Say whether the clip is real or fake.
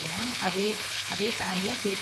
fake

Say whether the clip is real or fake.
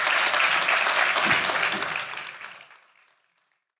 real